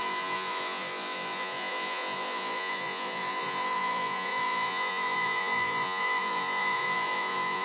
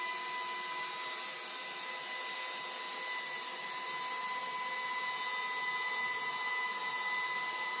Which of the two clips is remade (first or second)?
first